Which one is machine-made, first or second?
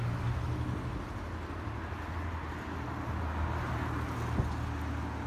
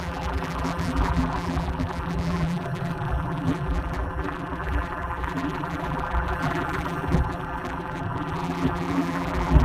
second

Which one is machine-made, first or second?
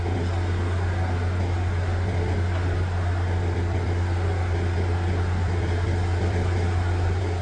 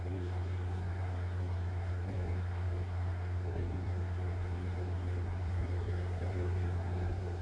second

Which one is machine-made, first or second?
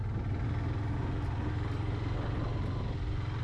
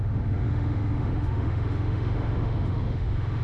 second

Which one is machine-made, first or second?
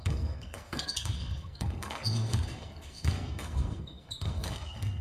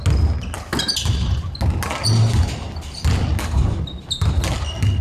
first